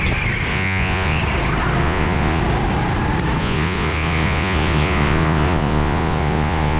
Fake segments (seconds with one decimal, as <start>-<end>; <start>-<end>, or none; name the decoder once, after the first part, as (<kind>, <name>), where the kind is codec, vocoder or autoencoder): 0.5-1.2 (vocoder, Vocos); 1.8-2.4; 3.4-6.8